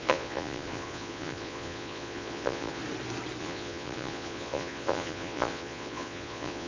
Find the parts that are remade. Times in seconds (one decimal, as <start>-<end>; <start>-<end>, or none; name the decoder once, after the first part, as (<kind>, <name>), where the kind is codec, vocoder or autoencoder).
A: 0.0-2.8 (vocoder, Vocos); 3.4-6.7